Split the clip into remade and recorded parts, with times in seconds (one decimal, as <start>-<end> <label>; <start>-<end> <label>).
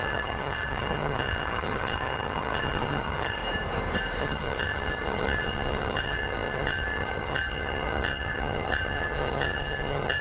0.0-3.4 remade; 3.4-4.2 recorded; 4.2-10.2 remade